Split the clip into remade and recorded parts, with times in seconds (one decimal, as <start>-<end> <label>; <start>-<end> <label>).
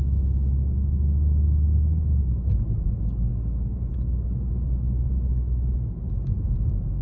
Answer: 0.0-3.3 recorded; 3.3-3.9 remade; 3.9-7.0 recorded